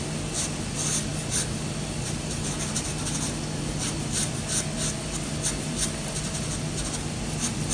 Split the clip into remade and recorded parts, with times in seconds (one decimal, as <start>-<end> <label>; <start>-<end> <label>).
0.0-7.7 recorded